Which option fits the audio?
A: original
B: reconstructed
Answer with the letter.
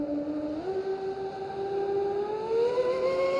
A